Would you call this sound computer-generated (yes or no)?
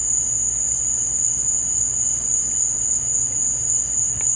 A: no